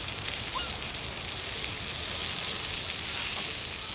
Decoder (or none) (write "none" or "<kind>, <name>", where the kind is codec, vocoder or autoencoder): none